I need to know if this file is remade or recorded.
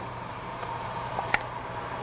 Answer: remade